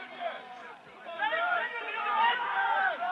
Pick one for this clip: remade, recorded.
remade